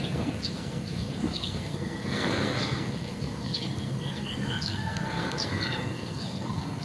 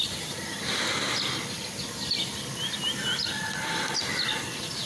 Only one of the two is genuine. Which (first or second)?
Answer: second